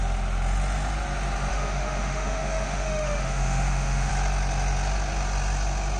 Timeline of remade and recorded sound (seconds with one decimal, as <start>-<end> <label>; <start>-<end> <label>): 0.0-1.5 recorded; 1.5-4.1 remade; 4.1-6.0 recorded